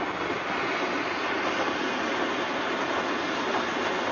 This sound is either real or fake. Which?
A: real